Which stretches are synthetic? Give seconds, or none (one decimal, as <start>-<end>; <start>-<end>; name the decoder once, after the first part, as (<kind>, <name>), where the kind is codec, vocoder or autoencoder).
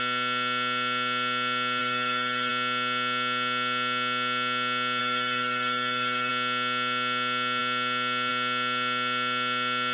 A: 1.8-2.5 (codec, DAC); 5.0-6.3